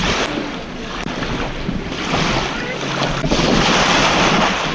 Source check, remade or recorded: recorded